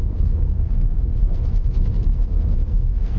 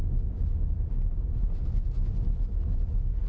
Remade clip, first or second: first